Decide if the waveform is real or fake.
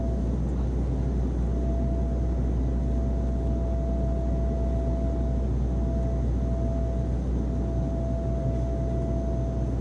real